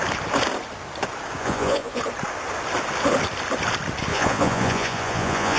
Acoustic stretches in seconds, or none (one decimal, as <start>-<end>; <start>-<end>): 0.0-1.4; 2.0-4.1